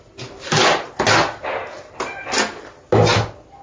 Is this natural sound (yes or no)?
yes